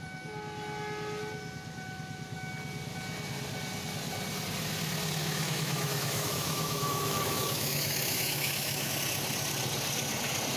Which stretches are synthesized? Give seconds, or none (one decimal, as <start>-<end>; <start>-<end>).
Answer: 5.2-8.9